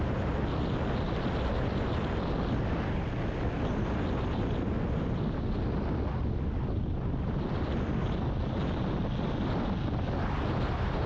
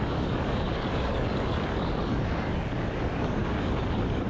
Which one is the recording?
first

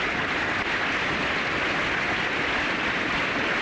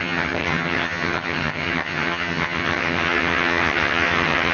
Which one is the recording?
first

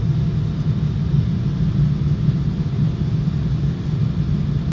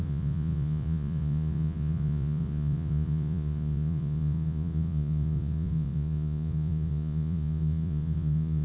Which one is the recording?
first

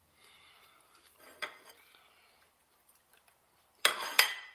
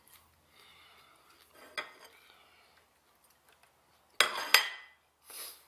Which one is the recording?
second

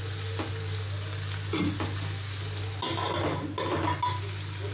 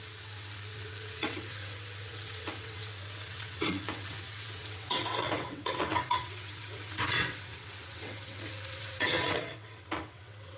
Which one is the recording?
first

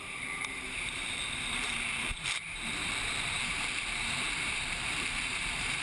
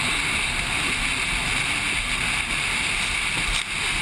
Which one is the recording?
second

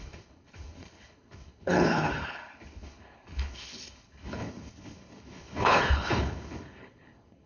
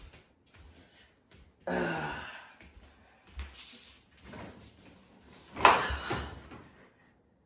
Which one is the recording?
second